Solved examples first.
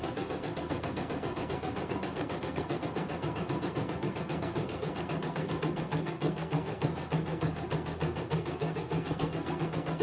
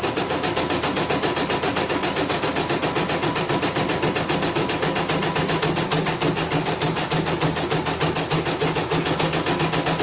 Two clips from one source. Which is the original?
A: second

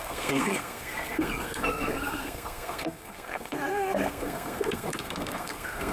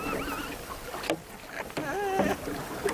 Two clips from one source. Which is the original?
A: second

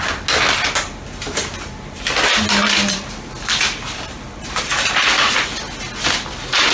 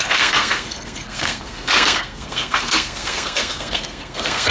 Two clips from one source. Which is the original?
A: first